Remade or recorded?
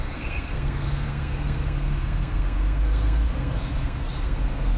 remade